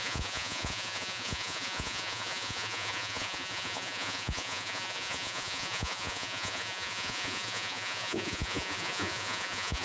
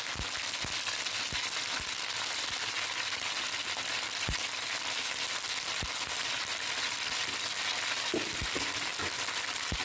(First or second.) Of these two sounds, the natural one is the second